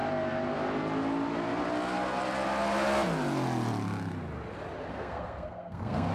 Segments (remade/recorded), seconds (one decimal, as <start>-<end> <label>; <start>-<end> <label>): 0.0-4.9 recorded; 4.9-6.1 remade